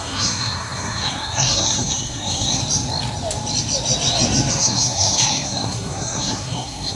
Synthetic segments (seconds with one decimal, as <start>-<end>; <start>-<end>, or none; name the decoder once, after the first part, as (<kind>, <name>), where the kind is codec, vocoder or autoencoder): 0.0-2.6 (codec, SNAC); 4.5-7.0